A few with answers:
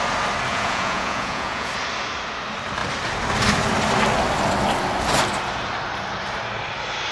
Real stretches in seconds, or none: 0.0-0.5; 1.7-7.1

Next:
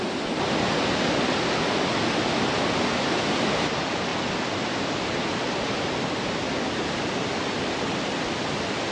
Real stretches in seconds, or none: 0.0-8.9

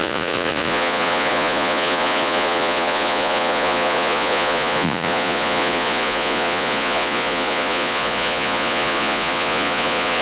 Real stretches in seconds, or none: none